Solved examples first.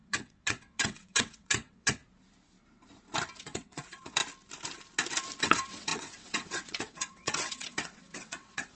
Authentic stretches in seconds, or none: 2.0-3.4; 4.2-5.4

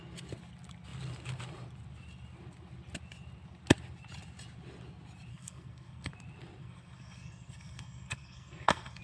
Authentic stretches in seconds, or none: 0.0-5.3; 6.1-6.6

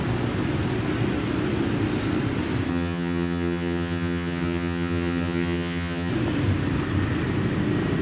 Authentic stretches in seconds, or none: 0.0-2.7; 6.1-8.0

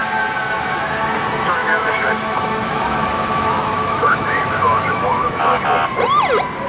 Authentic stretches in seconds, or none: 0.0-1.6; 5.6-6.7